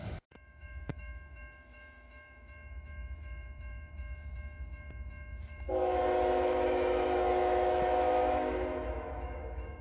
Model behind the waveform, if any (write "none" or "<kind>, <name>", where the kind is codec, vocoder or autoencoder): autoencoder, DAC-VAE